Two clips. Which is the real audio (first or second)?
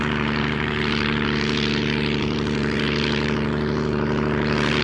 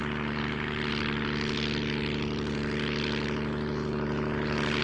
second